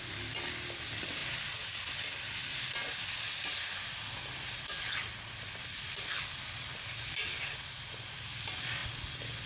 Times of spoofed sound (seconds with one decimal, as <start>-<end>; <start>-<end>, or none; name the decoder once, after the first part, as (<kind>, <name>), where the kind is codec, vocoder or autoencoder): none